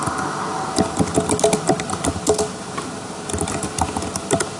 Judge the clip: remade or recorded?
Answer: recorded